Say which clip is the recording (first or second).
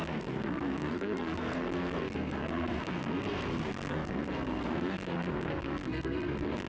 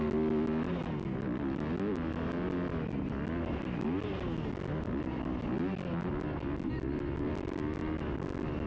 second